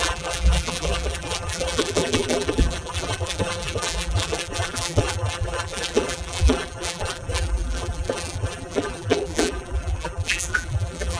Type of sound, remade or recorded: remade